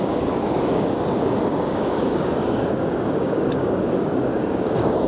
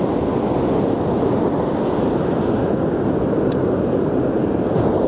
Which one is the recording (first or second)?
second